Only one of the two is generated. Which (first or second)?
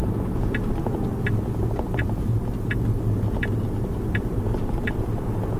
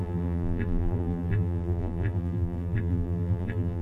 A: second